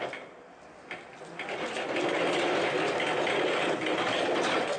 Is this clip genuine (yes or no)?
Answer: yes